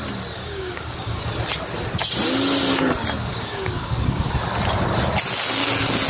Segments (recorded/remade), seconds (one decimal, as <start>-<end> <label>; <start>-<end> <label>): 0.0-0.4 recorded; 0.4-1.2 remade; 1.2-3.3 recorded; 3.3-4.3 remade; 4.3-6.1 recorded